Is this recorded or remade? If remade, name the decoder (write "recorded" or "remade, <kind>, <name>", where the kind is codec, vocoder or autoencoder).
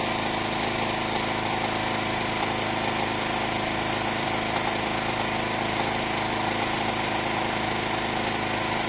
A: recorded